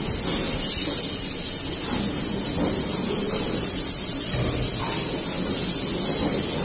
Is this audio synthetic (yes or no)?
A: no